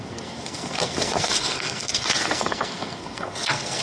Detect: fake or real fake